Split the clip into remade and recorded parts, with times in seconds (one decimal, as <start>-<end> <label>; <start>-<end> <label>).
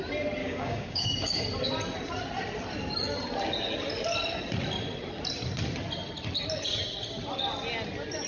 0.0-0.4 recorded; 0.4-1.4 remade; 1.4-8.3 recorded